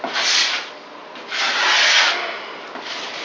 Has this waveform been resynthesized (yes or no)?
no